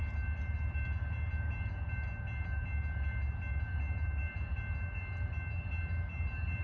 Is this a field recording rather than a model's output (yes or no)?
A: yes